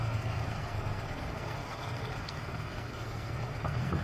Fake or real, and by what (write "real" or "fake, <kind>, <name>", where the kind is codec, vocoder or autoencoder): fake, codec, SNAC